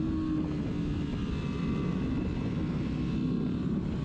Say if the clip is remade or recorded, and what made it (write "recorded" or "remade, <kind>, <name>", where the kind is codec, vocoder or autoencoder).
recorded